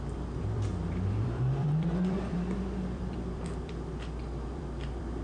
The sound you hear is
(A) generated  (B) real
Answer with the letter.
A